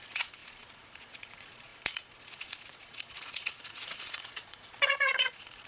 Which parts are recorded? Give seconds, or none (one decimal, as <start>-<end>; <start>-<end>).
none